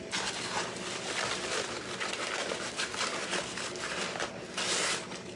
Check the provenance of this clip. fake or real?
fake